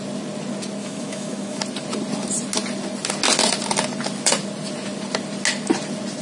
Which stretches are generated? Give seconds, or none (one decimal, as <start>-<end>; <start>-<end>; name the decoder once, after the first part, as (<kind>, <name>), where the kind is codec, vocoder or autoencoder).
0.8-1.6 (autoencoder, DAC-VAE)